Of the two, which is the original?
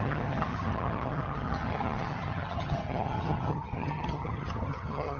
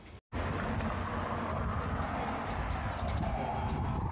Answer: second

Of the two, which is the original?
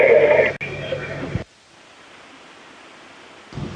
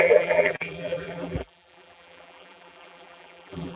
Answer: first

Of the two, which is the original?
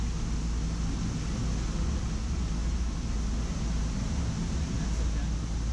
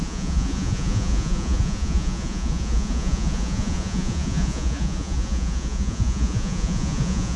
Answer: first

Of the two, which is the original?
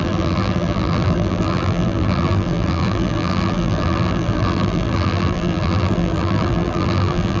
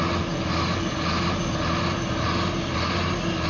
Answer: second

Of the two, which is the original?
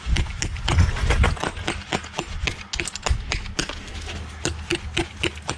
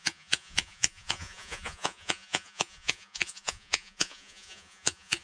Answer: first